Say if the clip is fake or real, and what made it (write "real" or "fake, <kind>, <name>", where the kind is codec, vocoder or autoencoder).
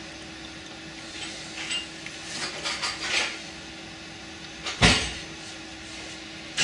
real